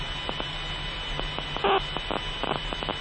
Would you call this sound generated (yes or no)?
no